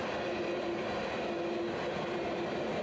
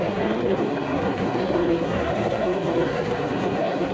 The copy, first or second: second